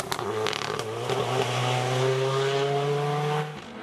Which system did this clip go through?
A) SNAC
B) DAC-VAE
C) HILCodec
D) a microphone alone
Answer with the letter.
D